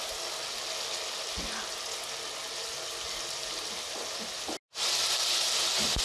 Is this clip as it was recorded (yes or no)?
yes